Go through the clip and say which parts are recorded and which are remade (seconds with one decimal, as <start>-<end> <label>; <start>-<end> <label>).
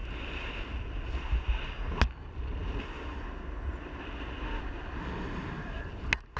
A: 0.0-6.4 recorded